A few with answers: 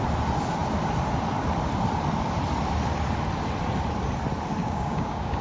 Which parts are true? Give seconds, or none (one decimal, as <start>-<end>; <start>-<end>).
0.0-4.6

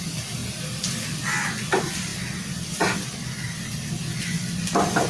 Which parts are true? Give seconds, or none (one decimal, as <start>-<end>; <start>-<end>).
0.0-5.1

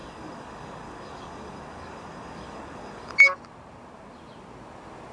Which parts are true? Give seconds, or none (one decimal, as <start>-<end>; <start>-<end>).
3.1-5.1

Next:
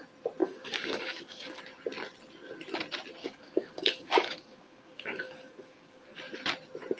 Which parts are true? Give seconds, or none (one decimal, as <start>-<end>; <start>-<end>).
0.0-0.4; 1.6-3.2; 6.2-7.0

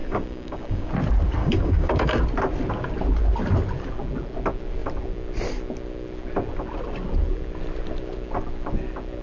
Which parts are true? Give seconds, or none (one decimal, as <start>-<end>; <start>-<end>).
0.9-1.4; 2.2-9.2